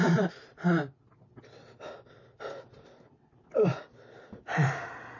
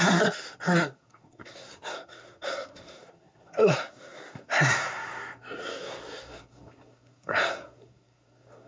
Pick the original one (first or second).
first